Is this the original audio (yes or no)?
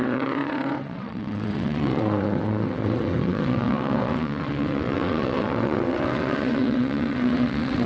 no